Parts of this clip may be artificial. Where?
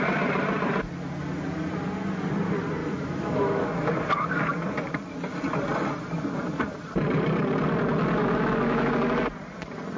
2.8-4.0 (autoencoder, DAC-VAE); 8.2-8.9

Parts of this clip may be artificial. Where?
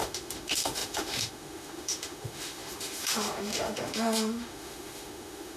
0.0-5.6 (autoencoder, DAC-VAE)